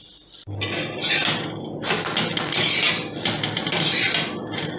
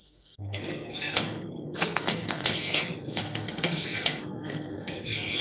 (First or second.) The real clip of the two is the first